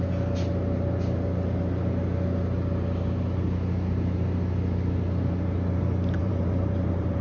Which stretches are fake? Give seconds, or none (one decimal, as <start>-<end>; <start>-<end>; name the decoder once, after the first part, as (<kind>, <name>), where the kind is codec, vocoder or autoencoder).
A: 6.2-7.2 (vocoder, BigVGAN v2)